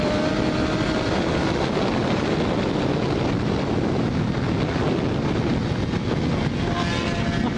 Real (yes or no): yes